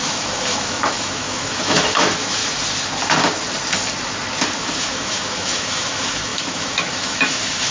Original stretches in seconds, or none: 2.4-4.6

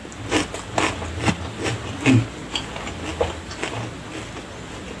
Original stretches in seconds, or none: 0.0-5.0